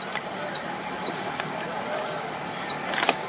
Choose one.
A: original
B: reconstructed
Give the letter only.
A